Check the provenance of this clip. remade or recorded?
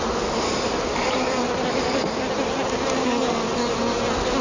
recorded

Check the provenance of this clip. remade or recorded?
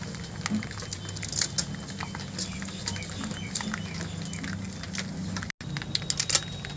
recorded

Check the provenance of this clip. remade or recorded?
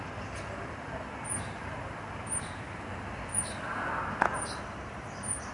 recorded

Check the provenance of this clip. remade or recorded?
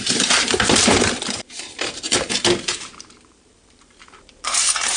remade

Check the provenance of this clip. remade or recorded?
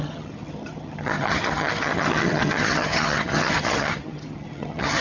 remade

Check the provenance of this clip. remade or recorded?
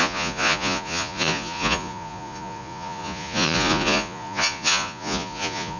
remade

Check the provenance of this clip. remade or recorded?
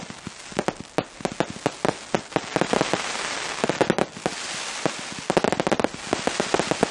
recorded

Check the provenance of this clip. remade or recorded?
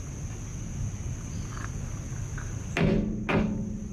recorded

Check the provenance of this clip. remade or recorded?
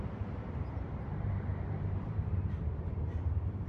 remade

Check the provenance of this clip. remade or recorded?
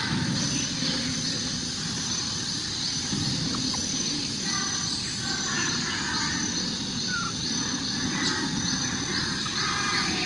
recorded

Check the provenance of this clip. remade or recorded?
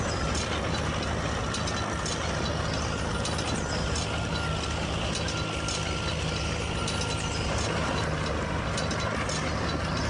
recorded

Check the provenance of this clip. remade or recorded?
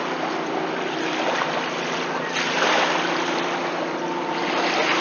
recorded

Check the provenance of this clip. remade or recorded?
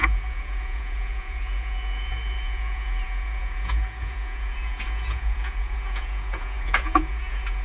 remade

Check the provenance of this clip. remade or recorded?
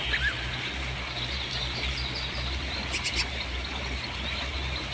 recorded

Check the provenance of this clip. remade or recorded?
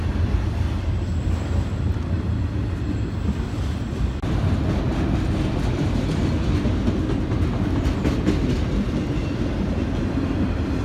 recorded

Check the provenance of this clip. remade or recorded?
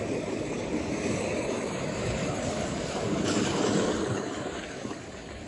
remade